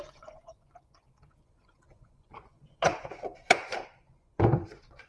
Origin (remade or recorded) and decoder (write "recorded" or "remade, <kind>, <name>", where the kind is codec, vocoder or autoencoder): remade, vocoder, Vocos